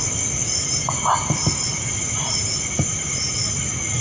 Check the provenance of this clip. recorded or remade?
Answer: recorded